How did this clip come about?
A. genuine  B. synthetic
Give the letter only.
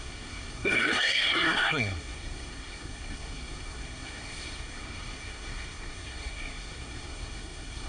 B